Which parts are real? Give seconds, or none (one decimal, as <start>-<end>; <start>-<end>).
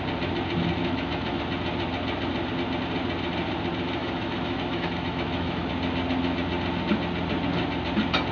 0.0-0.8; 1.4-4.0; 5.7-8.3